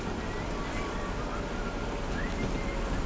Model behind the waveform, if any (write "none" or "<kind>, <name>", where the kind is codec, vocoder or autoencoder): none